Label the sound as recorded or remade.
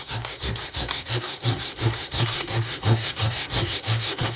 remade